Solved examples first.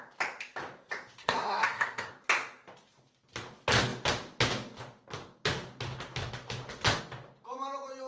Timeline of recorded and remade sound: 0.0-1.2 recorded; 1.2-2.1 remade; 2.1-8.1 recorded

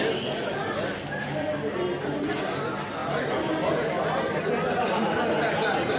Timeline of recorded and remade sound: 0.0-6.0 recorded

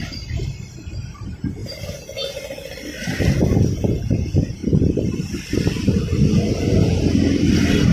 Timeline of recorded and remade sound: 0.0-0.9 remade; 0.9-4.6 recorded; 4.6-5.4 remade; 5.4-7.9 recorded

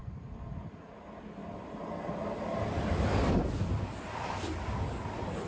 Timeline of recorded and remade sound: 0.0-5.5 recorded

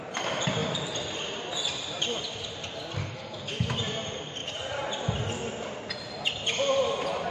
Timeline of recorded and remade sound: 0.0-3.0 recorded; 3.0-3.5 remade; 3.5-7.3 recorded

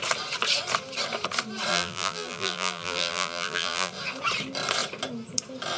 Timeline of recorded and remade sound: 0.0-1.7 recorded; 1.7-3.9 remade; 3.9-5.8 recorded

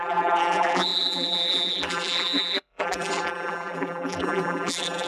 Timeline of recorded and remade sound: 0.0-5.1 remade

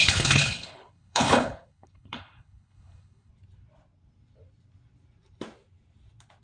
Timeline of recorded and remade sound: 0.0-3.3 remade; 3.3-6.4 recorded